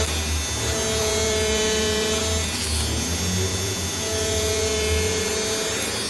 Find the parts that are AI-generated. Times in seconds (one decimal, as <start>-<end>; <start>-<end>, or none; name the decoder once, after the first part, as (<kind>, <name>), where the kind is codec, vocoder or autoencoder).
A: 1.0-2.2 (vocoder, Vocos); 3.5-5.3